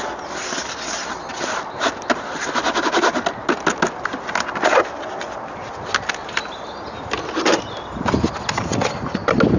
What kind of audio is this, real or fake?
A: real